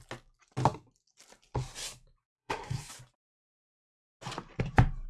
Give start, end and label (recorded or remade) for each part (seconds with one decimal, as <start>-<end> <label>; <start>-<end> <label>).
0.0-2.2 recorded; 2.2-2.9 remade; 2.9-5.1 recorded

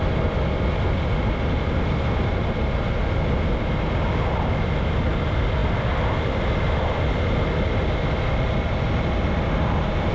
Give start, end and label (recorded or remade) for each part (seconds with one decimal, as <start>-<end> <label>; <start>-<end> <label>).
0.0-10.1 recorded